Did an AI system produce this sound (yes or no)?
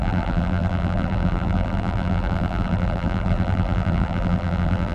yes